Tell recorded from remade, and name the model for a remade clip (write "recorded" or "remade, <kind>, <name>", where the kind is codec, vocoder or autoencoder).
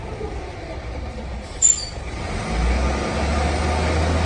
recorded